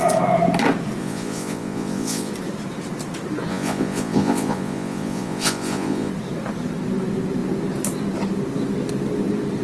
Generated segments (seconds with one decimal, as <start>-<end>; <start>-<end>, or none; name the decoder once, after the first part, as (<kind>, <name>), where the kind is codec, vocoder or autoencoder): 1.0-2.3 (vocoder, Vocos); 3.5-6.1